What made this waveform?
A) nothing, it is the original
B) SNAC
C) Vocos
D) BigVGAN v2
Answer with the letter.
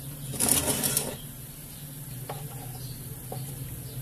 A